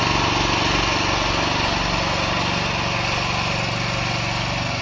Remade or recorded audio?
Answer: recorded